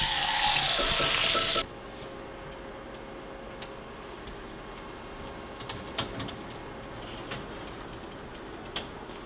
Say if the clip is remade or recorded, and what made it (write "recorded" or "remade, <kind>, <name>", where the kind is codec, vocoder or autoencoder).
recorded